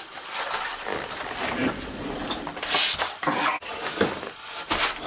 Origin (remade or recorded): recorded